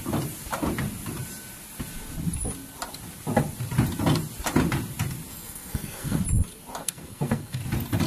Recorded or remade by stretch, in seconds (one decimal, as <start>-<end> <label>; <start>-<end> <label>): 0.0-5.3 recorded; 5.3-6.2 remade; 6.2-6.8 recorded; 6.8-7.6 remade; 7.6-8.1 recorded